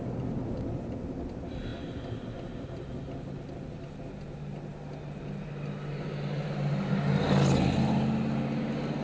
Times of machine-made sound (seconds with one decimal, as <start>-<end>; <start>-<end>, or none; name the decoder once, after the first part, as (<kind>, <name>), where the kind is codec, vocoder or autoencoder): none